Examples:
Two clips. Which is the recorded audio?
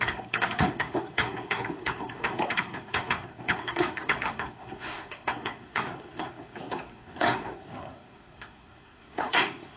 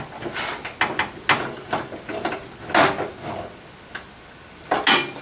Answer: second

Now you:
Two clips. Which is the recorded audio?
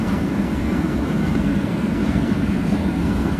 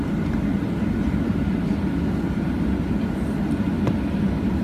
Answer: second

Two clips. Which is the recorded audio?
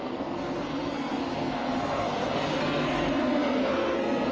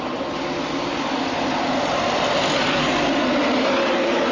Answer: second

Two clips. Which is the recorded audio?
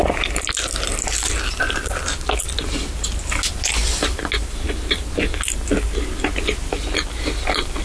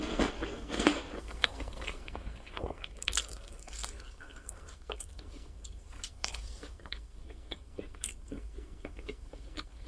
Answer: first